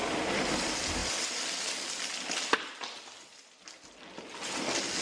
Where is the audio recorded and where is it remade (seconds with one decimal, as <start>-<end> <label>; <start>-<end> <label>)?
0.0-5.0 recorded